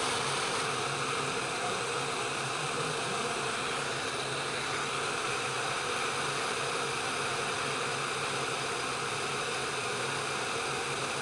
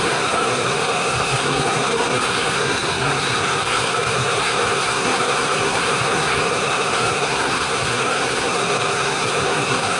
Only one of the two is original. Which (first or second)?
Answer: first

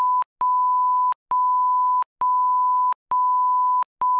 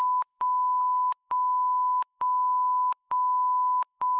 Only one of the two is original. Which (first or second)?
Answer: first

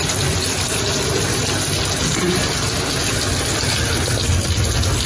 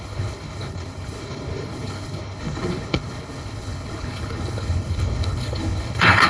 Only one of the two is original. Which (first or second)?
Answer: first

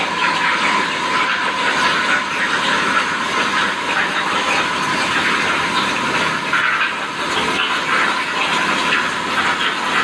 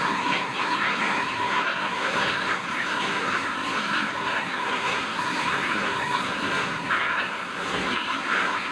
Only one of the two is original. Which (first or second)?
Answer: first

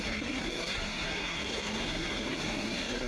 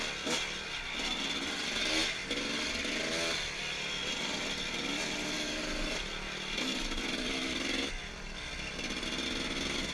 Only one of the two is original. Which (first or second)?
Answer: second